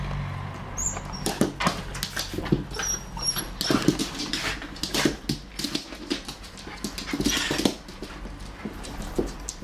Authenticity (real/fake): real